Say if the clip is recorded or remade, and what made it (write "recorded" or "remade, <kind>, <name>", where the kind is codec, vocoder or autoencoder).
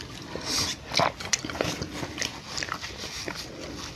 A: recorded